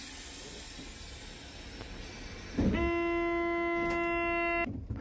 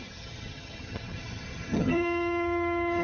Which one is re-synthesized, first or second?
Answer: second